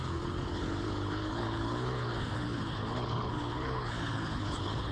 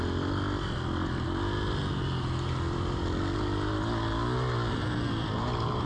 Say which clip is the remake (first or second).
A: first